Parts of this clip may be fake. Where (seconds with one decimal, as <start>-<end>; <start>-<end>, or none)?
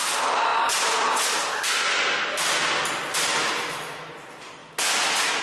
3.4-4.1